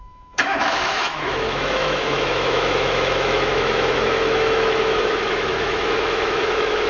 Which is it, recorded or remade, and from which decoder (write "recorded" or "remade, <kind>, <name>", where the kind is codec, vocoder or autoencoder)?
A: remade, autoencoder, DAC-VAE